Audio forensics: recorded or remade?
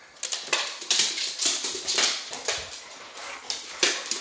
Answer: recorded